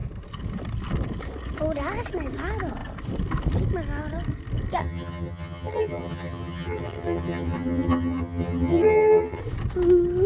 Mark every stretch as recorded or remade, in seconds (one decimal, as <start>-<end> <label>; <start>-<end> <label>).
0.0-4.8 recorded; 4.8-9.4 remade; 9.4-10.3 recorded